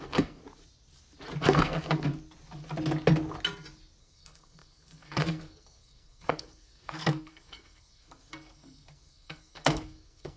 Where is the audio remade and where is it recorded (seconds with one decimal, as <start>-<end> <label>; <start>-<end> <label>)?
0.0-0.4 remade; 0.4-1.4 recorded; 1.4-2.1 remade; 2.1-4.0 recorded; 4.0-10.4 remade